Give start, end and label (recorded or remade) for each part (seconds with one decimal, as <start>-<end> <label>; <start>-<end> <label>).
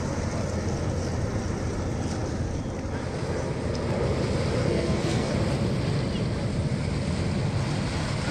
0.0-4.6 recorded; 4.6-5.3 remade; 5.3-8.3 recorded